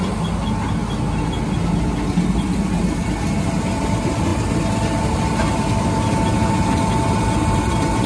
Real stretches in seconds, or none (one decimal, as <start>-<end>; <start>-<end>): 0.0-8.1